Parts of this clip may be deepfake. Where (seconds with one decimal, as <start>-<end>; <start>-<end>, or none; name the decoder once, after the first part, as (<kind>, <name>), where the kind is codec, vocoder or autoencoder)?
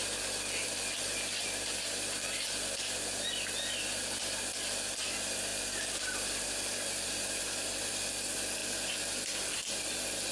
none